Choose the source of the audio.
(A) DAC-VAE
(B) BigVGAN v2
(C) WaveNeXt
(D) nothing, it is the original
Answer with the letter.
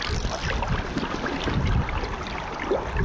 D